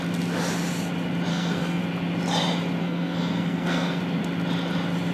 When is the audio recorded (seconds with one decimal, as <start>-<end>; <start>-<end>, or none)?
0.0-1.3; 1.8-2.8; 4.0-5.1